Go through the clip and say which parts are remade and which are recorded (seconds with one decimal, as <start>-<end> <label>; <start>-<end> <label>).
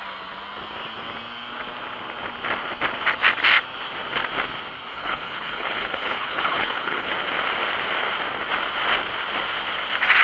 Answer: 0.0-4.9 recorded; 4.9-7.1 remade; 7.1-10.2 recorded